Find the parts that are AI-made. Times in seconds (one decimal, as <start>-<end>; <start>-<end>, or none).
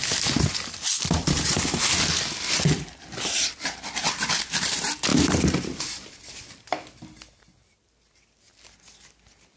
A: 5.1-6.3